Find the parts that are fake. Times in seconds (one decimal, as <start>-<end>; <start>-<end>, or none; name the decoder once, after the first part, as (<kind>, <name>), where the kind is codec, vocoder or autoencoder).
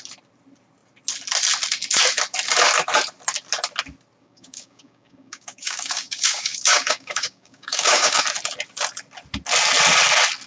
4.2-8.2 (codec, DAC)